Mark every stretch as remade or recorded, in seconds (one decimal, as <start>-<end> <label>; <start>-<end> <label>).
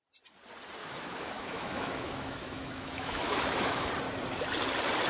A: 0.0-0.8 recorded; 0.8-3.9 remade; 3.9-5.1 recorded